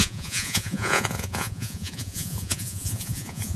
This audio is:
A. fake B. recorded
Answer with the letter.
A